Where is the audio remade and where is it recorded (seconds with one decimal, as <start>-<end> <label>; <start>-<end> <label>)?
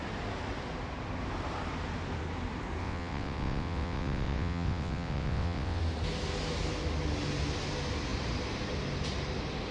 0.0-2.8 recorded; 2.8-5.8 remade; 5.8-9.7 recorded